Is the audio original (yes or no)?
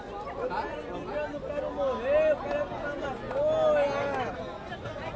yes